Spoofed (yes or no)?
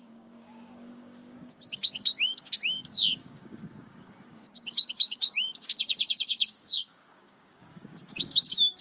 yes